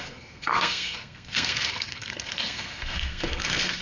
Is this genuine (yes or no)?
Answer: no